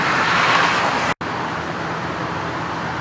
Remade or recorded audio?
recorded